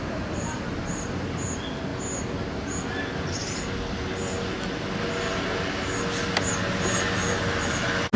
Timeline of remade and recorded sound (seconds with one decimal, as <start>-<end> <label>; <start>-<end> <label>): 0.0-8.2 recorded